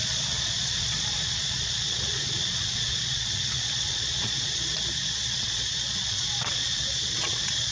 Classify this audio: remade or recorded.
remade